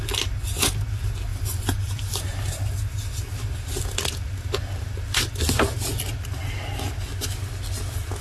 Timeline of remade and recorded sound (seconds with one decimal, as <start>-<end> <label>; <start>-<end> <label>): 0.0-1.3 recorded; 1.3-2.2 remade; 2.2-8.2 recorded